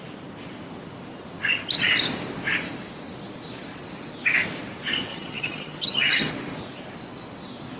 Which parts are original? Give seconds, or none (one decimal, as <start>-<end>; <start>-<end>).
0.0-5.1; 6.3-7.8